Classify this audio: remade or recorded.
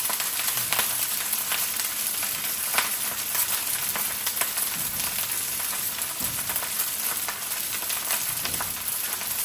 remade